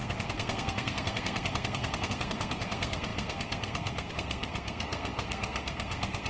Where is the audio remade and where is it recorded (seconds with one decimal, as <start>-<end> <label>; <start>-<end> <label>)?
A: 0.0-6.3 remade